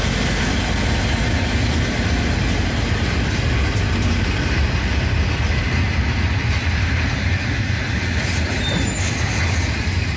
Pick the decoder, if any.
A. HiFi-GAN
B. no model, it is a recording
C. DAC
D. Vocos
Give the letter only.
B